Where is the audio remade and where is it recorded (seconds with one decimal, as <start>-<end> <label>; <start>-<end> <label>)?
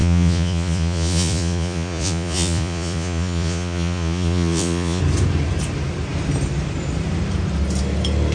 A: 0.0-5.0 remade; 5.0-8.3 recorded